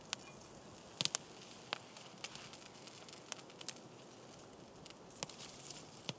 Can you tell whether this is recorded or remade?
recorded